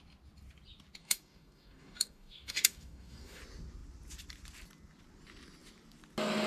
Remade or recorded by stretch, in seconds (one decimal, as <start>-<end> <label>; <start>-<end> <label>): 0.0-1.0 recorded; 1.0-3.4 remade; 3.4-6.5 recorded